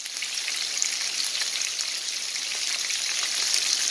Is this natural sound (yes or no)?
yes